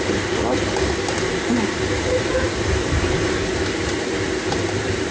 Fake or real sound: real